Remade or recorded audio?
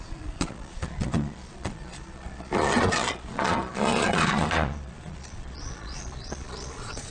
remade